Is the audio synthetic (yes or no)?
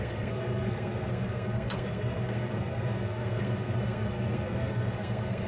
yes